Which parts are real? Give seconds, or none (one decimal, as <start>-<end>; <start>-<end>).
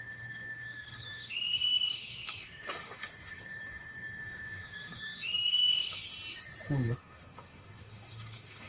6.1-7.0